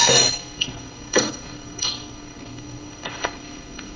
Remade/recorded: remade